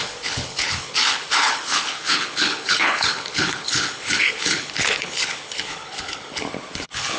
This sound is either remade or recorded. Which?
remade